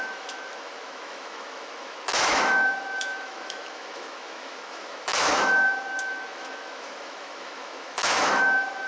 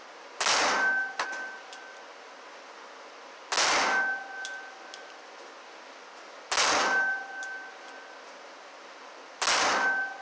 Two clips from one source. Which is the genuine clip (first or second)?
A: second